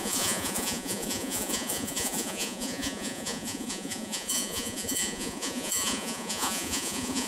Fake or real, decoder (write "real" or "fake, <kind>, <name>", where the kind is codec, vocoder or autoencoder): fake, vocoder, Vocos